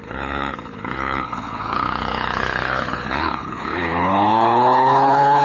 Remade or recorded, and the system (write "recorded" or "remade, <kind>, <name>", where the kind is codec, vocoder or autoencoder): remade, codec, HILCodec